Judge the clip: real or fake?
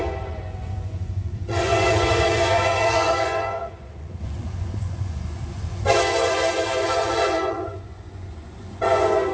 fake